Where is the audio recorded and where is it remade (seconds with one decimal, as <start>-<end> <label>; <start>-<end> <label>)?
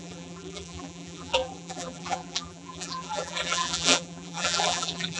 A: 0.0-5.2 remade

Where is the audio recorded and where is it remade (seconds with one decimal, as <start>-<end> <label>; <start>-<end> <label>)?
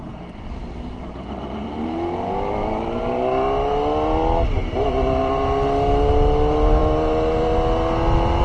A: 0.0-8.4 recorded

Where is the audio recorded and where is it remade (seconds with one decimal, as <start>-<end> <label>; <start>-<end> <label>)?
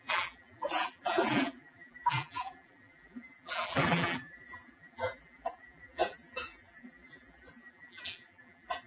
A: 0.0-8.9 remade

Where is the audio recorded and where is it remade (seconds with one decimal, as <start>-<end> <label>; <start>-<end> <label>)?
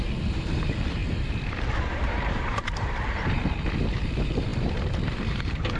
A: 0.0-5.8 remade